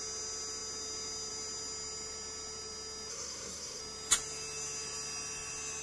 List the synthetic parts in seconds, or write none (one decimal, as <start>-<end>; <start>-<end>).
3.1-3.8